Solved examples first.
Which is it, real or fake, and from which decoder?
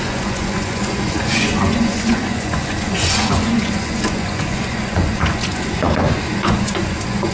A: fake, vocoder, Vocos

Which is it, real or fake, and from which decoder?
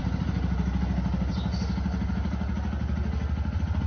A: real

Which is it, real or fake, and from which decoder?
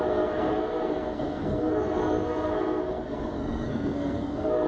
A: fake, codec, SNAC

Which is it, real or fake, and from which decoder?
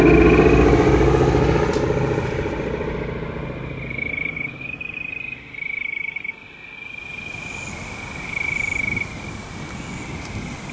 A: real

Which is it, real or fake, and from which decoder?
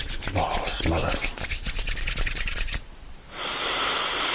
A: real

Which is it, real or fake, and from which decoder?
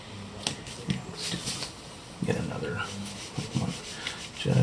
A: real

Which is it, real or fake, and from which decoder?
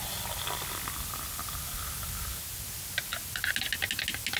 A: real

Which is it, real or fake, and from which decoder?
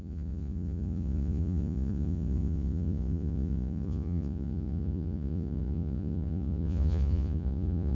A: fake, vocoder, Vocos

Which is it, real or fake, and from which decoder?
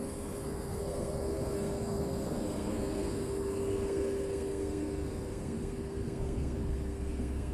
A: fake, codec, SNAC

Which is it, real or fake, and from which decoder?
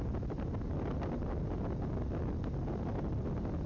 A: real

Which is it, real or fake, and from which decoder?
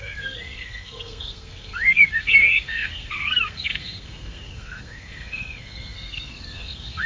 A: fake, codec, SNAC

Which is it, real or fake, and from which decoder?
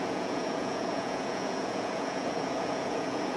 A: fake, vocoder, Vocos